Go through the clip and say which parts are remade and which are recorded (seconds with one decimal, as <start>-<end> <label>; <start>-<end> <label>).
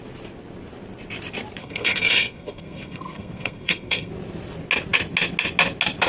0.0-1.6 recorded; 1.6-4.1 remade; 4.1-6.1 recorded